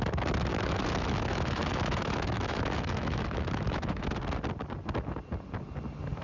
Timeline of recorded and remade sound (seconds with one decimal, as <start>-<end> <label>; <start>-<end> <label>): 0.0-0.5 recorded; 0.5-4.2 remade; 4.2-6.2 recorded